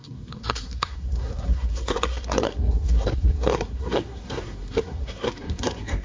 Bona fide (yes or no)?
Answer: no